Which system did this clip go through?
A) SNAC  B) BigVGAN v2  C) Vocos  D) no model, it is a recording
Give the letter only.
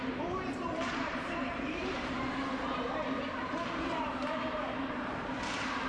B